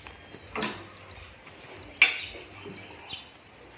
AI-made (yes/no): no